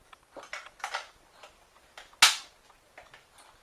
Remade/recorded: recorded